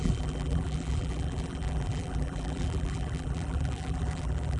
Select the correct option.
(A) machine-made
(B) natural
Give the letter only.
A